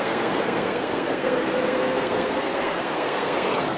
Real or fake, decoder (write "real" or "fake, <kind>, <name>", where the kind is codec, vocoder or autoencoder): fake, codec, SNAC